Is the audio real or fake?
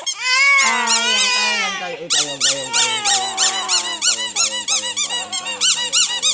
real